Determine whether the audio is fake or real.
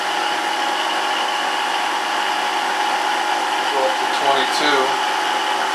real